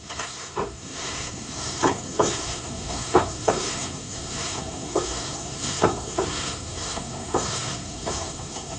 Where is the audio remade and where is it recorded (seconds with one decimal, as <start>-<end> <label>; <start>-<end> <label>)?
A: 0.0-8.8 remade